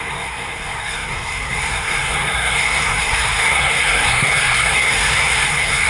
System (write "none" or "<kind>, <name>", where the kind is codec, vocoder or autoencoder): codec, SNAC